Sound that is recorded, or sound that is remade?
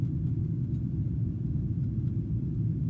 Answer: recorded